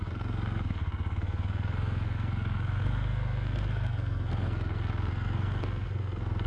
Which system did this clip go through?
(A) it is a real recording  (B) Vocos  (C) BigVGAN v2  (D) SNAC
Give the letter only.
D